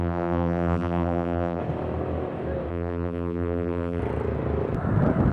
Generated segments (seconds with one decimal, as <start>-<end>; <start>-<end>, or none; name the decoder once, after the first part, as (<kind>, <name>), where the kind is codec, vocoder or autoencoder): 0.0-1.6 (vocoder, BigVGAN v2); 2.7-4.0